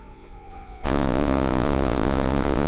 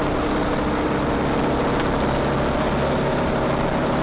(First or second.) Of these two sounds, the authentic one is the second